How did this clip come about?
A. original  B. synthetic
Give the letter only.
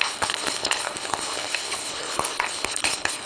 B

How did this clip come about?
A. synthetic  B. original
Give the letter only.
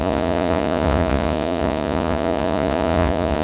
A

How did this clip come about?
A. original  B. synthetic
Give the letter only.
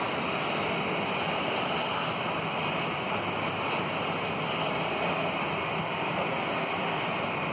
A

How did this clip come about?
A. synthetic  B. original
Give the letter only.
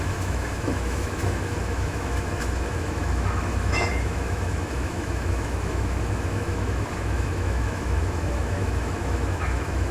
A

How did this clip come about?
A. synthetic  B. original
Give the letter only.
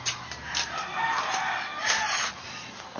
B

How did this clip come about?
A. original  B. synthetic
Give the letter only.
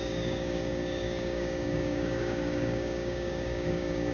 B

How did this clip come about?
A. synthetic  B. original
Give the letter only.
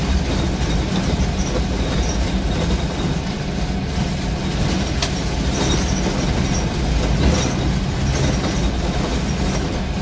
B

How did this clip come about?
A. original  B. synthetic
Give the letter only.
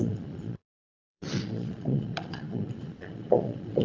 B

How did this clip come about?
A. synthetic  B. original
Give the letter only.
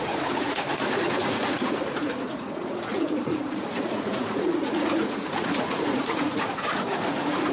A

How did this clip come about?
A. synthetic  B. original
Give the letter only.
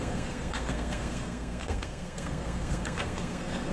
A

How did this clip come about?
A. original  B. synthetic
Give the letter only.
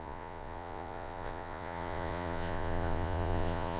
B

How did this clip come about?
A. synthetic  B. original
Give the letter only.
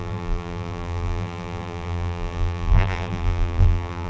A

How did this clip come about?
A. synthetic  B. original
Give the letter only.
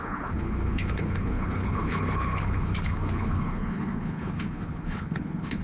A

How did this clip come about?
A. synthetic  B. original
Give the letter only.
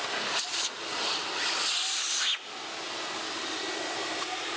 B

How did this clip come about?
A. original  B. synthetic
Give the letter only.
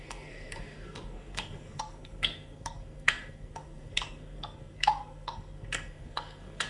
B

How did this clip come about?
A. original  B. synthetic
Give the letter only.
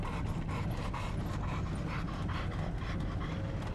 A